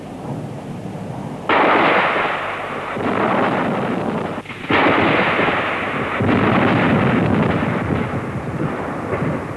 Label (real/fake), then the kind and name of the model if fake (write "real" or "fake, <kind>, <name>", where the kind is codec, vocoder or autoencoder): real